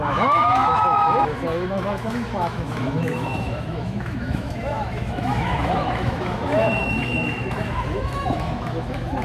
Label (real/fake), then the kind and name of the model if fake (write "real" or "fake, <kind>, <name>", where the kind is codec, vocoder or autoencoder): fake, autoencoder, DAC-VAE